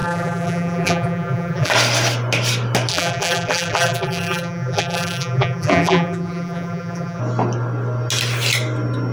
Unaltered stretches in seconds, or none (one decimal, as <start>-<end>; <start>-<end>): 1.7-2.9; 7.2-9.1